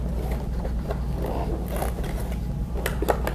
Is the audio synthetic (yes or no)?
no